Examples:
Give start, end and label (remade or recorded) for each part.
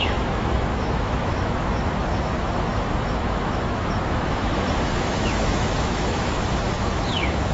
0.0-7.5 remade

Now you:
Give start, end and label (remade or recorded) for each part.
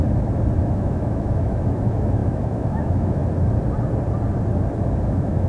0.0-0.6 recorded; 0.6-3.2 remade; 3.2-4.8 recorded; 4.8-5.5 remade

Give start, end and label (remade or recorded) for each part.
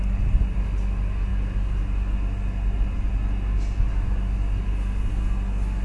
0.0-5.8 recorded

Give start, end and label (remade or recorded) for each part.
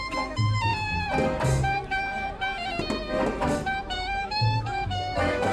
0.0-0.7 remade; 0.7-3.8 recorded; 3.8-5.5 remade